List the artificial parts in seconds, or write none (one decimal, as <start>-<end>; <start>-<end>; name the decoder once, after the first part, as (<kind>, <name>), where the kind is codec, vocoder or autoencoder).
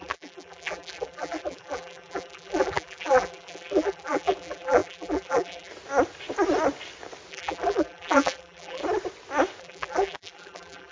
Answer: 0.0-5.7 (vocoder, BigVGAN v2); 7.3-8.8; 9.6-10.9